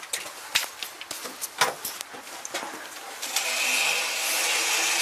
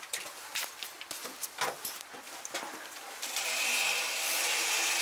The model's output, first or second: second